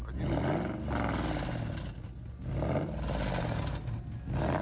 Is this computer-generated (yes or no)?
no